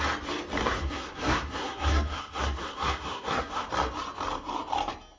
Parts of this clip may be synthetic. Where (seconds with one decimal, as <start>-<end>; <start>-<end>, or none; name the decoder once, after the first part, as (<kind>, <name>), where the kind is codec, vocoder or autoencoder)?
0.6-3.7 (codec, SNAC)